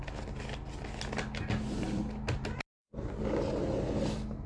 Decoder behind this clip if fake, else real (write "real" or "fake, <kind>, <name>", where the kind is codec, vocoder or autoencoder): real